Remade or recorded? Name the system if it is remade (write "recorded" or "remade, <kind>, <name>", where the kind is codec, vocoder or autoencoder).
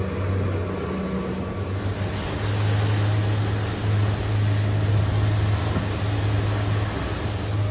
recorded